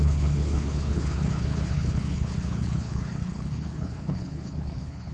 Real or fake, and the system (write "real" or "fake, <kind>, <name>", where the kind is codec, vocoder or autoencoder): fake, codec, HILCodec